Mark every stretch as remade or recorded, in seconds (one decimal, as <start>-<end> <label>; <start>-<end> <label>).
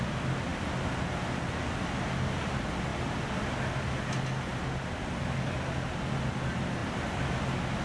0.0-7.8 recorded